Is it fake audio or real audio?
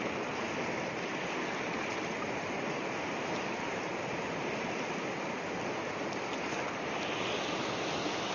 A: real